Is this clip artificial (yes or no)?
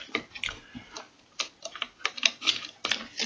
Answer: no